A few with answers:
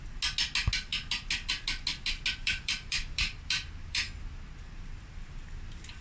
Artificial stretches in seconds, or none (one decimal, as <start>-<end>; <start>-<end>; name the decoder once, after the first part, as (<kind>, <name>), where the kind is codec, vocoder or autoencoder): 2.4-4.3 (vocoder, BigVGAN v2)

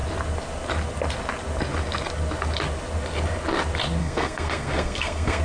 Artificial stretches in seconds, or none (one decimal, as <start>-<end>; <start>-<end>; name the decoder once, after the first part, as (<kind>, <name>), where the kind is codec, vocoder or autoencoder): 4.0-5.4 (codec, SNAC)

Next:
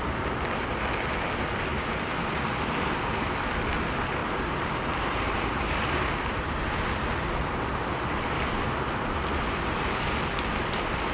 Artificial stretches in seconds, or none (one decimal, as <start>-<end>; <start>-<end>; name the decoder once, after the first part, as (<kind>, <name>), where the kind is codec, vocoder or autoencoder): 4.2-6.7 (vocoder, BigVGAN v2)

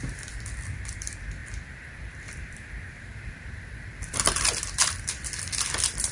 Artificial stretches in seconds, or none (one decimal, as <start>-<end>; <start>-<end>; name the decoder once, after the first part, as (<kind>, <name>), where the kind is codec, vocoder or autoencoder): 0.0-6.1 (vocoder, BigVGAN v2)

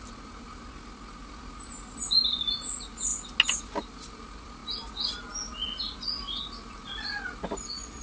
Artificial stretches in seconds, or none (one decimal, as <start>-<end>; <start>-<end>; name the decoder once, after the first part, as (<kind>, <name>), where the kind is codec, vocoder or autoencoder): none

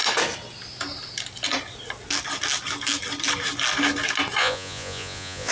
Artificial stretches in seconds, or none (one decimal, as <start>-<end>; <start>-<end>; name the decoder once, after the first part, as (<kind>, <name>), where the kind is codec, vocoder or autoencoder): 4.4-5.5 (vocoder, Vocos)

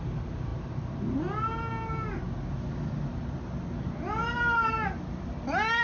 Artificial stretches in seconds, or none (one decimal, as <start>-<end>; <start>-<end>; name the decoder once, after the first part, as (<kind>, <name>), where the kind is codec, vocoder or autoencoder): none